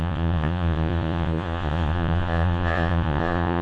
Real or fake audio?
fake